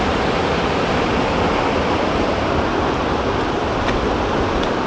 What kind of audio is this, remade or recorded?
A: recorded